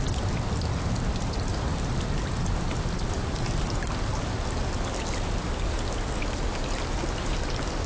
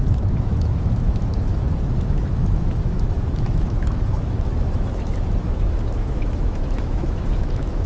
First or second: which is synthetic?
second